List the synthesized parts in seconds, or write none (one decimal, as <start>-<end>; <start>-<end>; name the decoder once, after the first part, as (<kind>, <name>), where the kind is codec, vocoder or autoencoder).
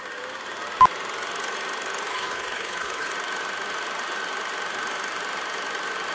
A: 2.1-3.1 (codec, HILCodec)